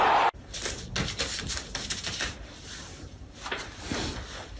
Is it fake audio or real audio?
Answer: real